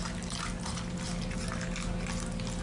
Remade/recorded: recorded